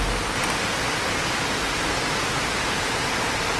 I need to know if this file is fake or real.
real